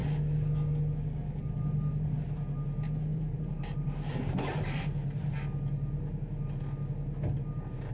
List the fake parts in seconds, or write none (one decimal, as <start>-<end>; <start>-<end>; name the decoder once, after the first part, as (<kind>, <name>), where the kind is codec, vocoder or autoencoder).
3.1-5.3 (vocoder, BigVGAN v2)